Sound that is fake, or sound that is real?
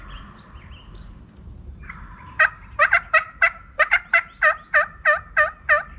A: real